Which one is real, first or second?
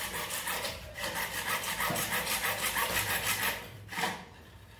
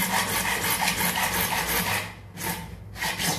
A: second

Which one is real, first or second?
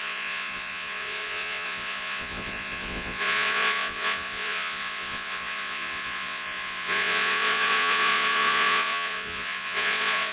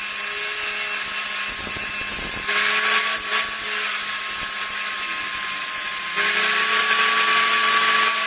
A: second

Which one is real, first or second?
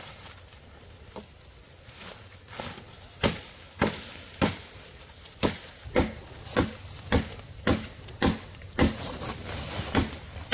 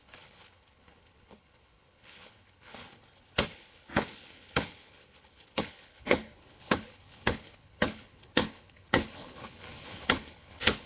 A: first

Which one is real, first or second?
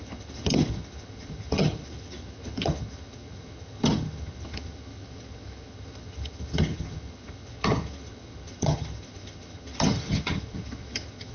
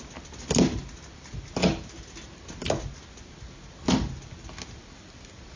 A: second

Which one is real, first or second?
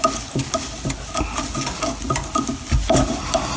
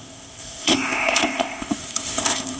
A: first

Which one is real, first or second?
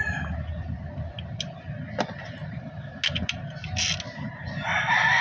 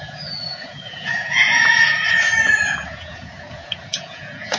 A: first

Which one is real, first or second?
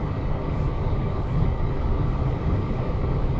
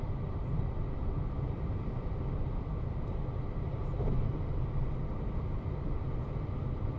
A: second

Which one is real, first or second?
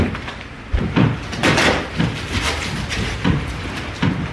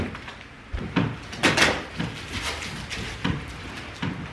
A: second